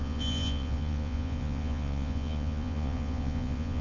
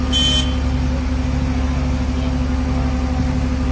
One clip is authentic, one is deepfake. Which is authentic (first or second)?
second